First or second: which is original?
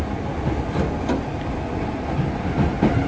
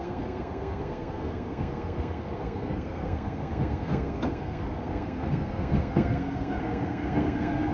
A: first